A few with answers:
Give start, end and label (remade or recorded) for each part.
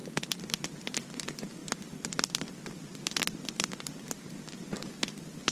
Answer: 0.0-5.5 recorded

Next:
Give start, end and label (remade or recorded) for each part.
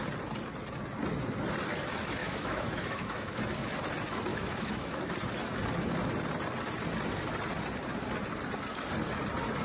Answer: 0.0-2.2 recorded; 2.2-3.4 remade; 3.4-4.3 recorded; 4.3-5.1 remade; 5.1-9.6 recorded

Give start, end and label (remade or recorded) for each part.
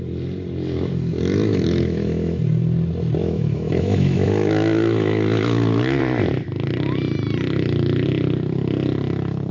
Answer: 0.0-1.5 recorded; 1.5-2.4 remade; 2.4-3.2 recorded; 3.2-6.0 remade; 6.0-9.5 recorded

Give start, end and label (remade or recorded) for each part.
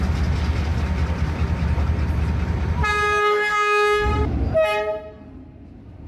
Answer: 0.0-3.2 recorded; 3.2-4.1 remade; 4.1-6.1 recorded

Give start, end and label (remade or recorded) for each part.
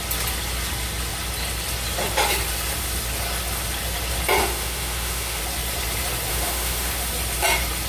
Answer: 0.0-4.4 recorded; 4.4-5.4 remade; 5.4-6.3 recorded; 6.3-6.9 remade; 6.9-7.9 recorded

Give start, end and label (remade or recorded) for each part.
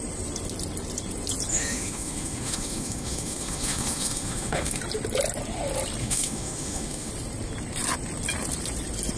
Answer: 0.0-1.5 recorded; 1.5-4.8 remade; 4.8-6.0 recorded; 6.0-7.1 remade; 7.1-9.2 recorded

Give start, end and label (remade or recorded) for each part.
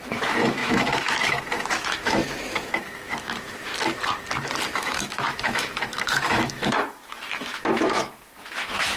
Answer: 0.0-3.7 remade; 3.7-4.7 recorded; 4.7-9.0 remade